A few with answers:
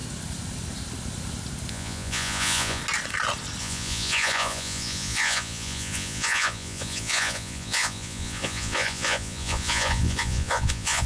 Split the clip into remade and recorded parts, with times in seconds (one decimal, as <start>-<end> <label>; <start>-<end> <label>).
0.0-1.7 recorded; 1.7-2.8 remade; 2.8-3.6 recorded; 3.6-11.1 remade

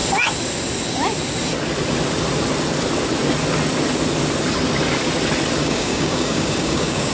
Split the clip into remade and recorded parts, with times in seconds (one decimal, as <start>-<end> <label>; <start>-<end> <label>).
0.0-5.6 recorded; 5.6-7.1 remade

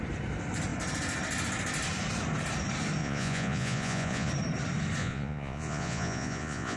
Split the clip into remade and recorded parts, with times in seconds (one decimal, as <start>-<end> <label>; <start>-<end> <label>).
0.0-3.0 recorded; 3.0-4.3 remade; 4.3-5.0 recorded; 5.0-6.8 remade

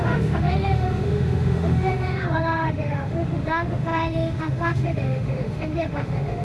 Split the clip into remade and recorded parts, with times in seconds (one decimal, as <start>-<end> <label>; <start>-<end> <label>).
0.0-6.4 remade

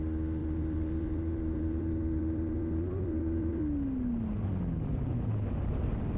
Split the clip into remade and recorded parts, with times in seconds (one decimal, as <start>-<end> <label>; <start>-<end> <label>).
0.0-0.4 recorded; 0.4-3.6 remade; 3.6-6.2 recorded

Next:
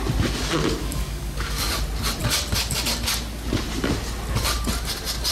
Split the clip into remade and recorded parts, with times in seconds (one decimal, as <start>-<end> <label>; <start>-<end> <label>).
0.0-0.8 recorded; 0.8-1.7 remade; 1.7-5.3 recorded